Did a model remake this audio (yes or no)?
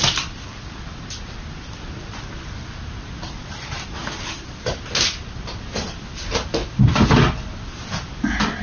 no